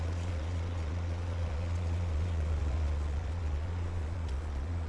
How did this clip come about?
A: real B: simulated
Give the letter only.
B